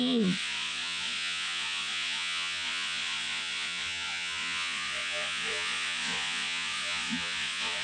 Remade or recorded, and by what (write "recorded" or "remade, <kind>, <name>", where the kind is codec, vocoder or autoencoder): remade, vocoder, Vocos